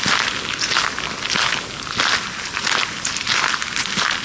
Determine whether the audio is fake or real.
real